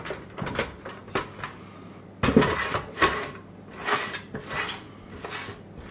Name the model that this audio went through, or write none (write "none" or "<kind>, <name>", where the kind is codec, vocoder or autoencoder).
none